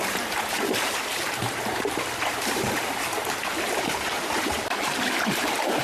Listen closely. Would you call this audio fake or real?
fake